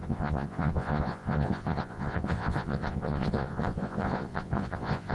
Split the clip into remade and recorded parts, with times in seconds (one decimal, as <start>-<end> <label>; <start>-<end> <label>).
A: 0.0-5.1 remade